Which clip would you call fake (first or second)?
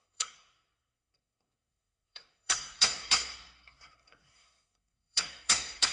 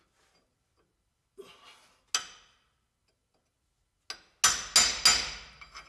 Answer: first